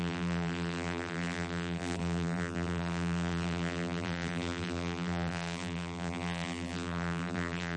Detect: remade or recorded remade